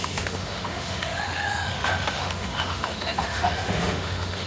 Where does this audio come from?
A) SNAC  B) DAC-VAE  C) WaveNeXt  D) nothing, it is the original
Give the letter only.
B